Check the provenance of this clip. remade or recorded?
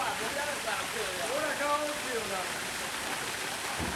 recorded